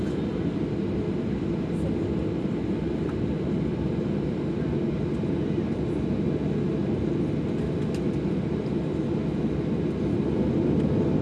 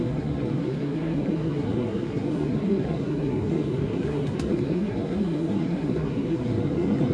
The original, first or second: first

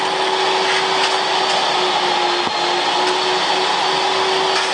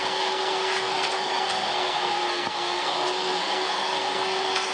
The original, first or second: first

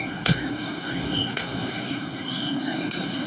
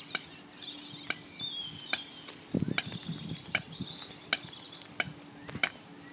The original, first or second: second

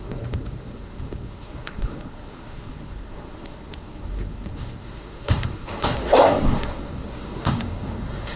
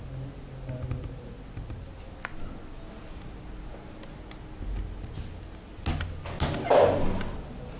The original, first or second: second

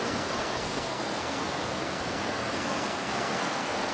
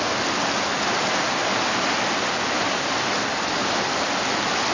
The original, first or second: second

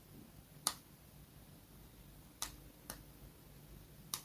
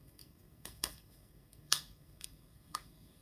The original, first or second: first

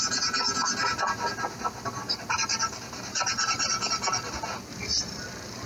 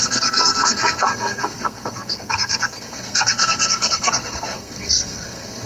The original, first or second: first